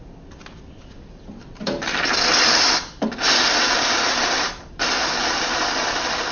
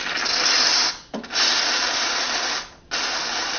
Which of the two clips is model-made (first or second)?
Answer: first